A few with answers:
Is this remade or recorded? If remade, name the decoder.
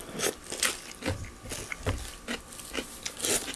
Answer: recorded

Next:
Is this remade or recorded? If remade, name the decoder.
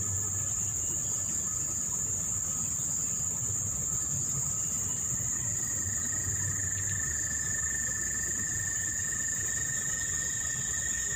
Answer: recorded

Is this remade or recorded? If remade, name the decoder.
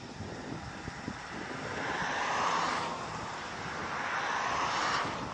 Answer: recorded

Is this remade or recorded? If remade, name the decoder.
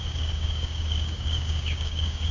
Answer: remade, codec, DAC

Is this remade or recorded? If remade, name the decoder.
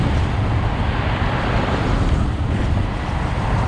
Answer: recorded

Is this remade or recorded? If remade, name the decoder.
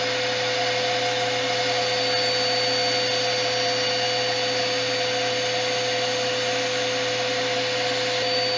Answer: recorded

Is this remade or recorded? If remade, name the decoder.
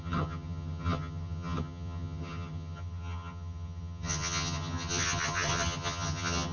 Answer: remade, vocoder, HiFi-GAN